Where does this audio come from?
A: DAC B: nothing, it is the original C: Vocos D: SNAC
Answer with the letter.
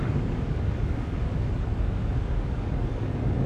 A